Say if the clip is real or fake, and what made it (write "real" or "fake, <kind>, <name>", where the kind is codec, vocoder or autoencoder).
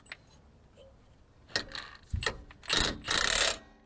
real